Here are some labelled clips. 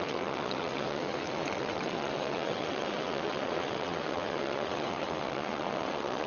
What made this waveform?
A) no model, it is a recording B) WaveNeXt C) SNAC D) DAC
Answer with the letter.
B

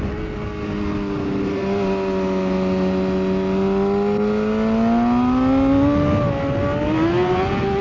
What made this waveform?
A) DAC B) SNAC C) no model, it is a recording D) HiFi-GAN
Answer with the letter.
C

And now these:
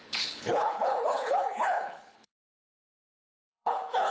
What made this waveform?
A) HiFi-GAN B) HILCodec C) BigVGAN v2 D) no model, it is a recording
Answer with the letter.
B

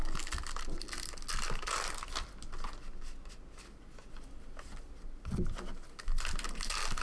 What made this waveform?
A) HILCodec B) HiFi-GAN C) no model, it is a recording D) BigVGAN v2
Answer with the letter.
C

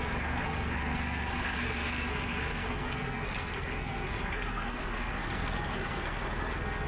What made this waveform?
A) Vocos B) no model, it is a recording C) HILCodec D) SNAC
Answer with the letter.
D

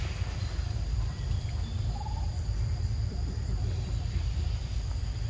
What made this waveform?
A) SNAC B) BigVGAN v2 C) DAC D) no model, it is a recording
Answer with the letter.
B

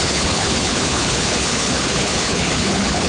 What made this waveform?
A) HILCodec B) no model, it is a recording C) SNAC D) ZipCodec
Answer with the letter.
A